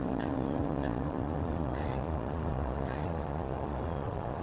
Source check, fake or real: fake